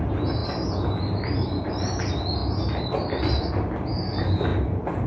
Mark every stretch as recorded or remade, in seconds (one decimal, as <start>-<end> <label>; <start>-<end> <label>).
0.0-5.1 recorded